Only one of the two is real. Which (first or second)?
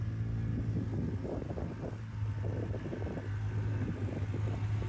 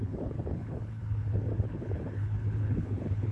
first